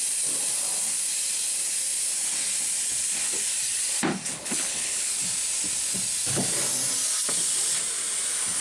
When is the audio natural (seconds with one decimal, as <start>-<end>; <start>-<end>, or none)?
0.0-4.3; 5.1-8.6